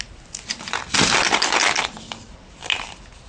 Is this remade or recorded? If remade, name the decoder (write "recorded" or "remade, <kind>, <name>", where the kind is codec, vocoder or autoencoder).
recorded